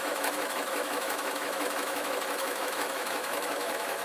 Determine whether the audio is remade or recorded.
remade